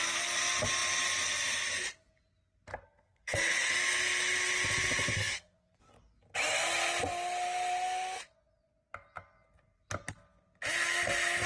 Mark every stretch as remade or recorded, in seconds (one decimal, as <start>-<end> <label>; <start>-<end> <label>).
0.0-2.7 recorded; 2.7-3.7 remade; 3.7-5.1 recorded; 5.1-5.8 remade; 5.8-11.5 recorded